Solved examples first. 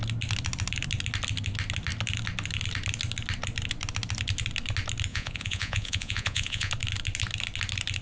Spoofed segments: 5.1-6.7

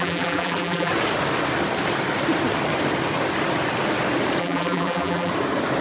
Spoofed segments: 0.0-0.9; 4.4-5.3

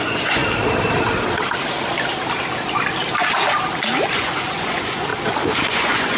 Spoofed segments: 0.0-0.4; 4.1-5.1; 5.7-6.2